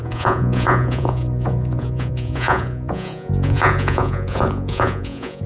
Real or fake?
fake